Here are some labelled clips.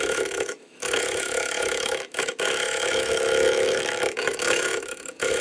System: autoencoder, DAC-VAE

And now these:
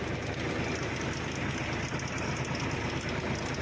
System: none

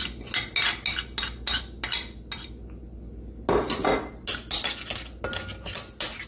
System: none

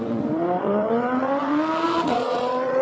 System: vocoder, Vocos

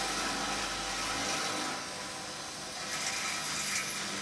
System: none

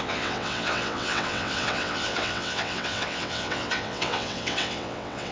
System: vocoder, WaveNeXt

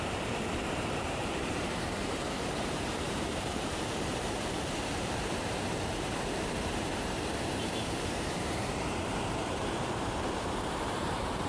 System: vocoder, BigVGAN v2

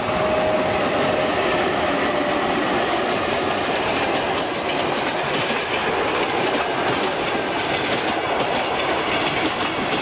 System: none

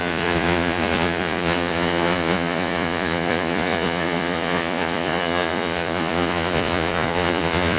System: vocoder, Vocos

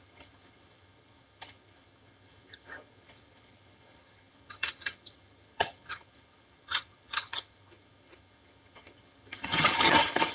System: vocoder, HiFi-GAN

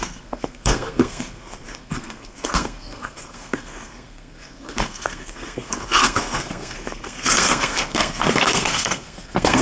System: codec, SNAC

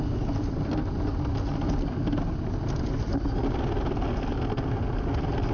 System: none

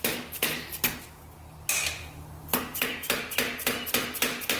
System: none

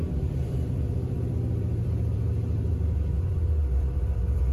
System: vocoder, BigVGAN v2